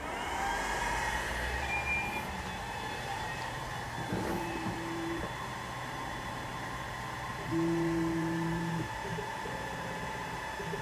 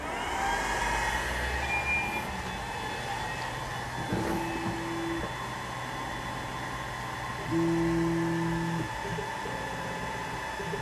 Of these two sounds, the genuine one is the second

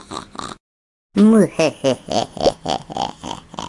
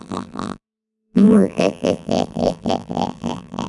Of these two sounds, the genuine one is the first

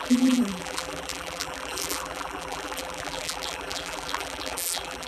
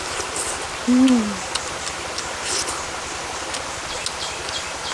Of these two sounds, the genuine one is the second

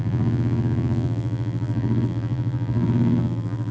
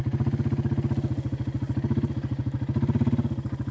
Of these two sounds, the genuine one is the second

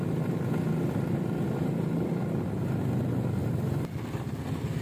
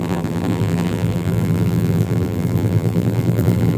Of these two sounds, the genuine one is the first